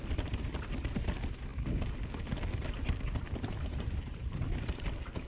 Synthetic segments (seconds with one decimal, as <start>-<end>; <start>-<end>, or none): none